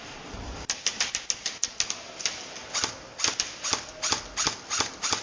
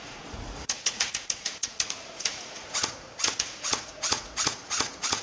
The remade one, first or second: second